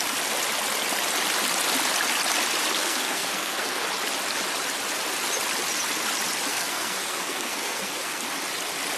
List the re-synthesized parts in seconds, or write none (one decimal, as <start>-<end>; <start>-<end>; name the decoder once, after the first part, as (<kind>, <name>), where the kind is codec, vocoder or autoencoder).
2.8-3.9 (codec, SNAC); 6.5-8.2